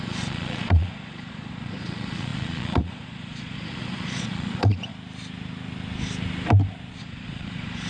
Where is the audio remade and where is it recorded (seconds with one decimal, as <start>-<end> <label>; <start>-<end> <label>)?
0.0-4.9 remade; 4.9-7.0 recorded; 7.0-7.9 remade